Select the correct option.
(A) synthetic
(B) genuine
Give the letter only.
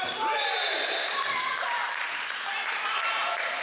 A